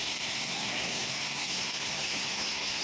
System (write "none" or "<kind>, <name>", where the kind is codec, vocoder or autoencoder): codec, SNAC